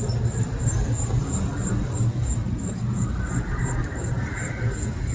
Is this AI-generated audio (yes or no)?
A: yes